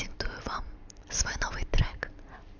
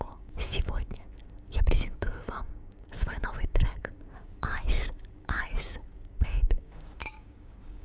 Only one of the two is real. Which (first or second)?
first